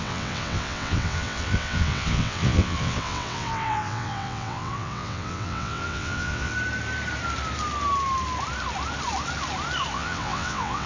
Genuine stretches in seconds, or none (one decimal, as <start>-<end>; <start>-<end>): 6.5-9.9